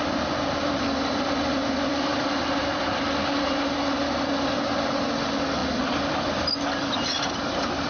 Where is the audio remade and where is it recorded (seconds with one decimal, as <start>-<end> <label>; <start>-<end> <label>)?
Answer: 0.0-7.9 recorded